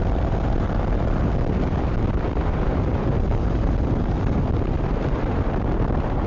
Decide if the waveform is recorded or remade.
remade